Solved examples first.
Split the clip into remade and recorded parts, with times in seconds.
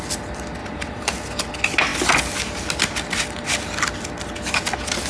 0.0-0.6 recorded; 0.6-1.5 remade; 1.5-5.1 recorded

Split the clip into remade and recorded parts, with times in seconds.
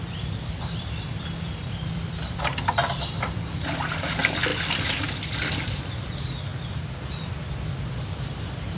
0.0-6.5 remade; 6.5-7.8 recorded; 7.8-8.8 remade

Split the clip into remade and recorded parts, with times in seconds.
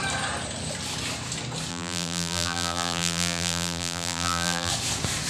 0.0-1.7 recorded; 1.7-4.7 remade; 4.7-5.3 recorded